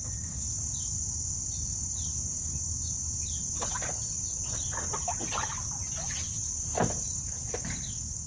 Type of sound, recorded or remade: recorded